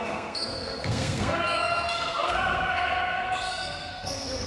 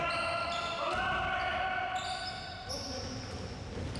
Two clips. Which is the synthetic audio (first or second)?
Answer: first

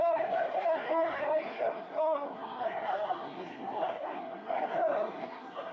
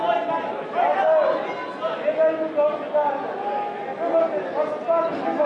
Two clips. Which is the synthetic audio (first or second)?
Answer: first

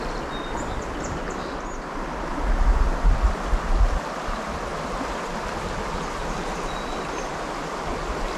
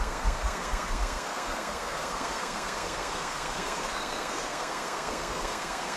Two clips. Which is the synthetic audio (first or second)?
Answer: second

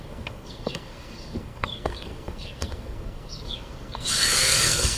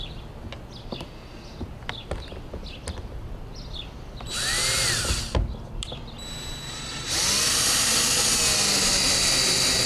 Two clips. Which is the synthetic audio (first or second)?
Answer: first